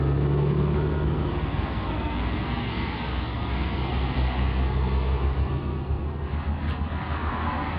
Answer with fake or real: fake